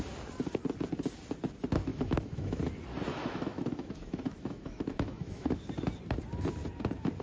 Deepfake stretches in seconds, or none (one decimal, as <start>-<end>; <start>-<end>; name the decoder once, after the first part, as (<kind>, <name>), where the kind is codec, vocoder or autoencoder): 1.9-2.6 (autoencoder, DAC-VAE); 3.1-5.6